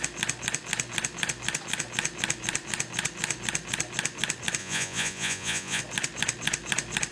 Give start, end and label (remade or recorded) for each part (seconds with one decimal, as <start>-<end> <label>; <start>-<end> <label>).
0.0-4.6 recorded; 4.6-5.8 remade; 5.8-7.1 recorded